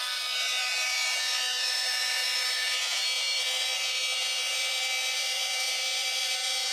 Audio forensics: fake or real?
fake